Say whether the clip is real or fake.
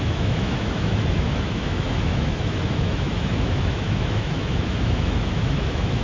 fake